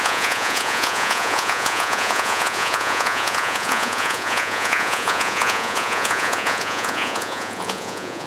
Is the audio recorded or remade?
remade